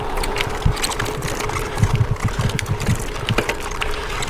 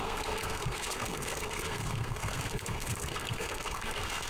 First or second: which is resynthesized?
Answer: second